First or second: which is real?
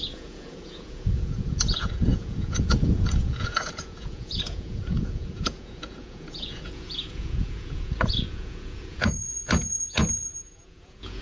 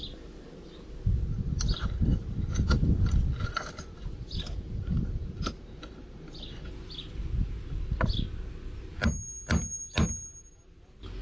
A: second